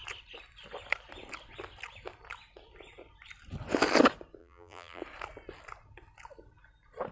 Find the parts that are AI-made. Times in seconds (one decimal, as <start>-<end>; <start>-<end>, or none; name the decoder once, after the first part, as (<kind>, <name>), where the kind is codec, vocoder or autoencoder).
4.4-5.0 (vocoder, BigVGAN v2)